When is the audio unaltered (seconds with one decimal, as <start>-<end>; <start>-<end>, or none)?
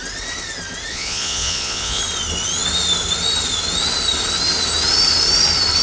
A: 0.0-0.9; 2.0-5.8